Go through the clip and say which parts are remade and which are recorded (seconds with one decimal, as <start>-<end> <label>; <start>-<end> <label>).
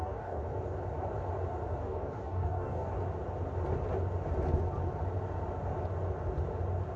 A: 0.0-0.4 remade; 0.4-1.8 recorded; 1.8-2.9 remade; 2.9-7.0 recorded